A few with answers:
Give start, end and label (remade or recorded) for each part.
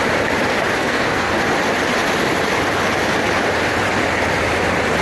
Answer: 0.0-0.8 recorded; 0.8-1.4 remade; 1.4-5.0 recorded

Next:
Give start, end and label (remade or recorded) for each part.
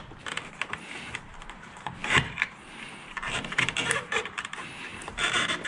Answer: 0.0-5.7 remade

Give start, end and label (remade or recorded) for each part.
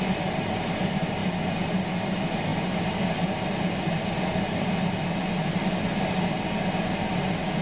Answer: 0.0-7.6 recorded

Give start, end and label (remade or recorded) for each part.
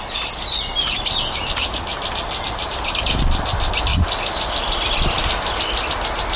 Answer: 0.0-1.9 recorded; 1.9-3.2 remade; 3.2-3.9 recorded; 3.9-5.3 remade; 5.3-6.4 recorded